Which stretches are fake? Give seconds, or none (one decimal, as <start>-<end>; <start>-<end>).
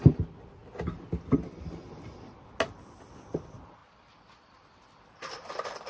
none